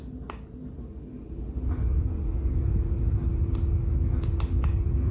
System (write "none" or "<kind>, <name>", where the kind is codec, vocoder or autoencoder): none